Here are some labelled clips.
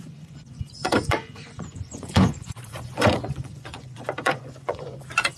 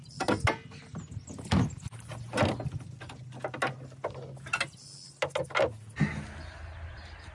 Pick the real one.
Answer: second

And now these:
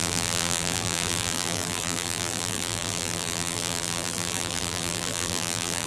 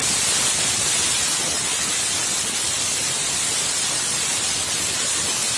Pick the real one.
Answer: second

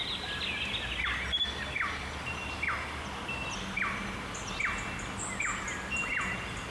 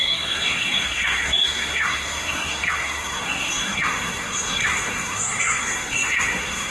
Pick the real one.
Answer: first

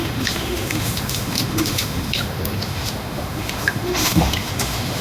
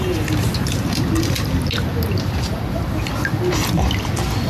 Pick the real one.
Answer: second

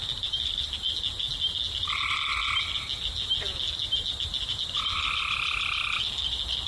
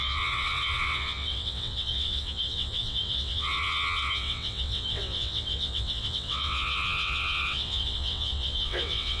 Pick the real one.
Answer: first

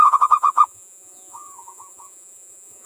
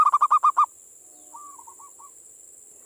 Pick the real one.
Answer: second